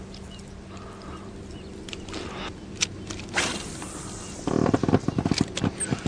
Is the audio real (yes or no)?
yes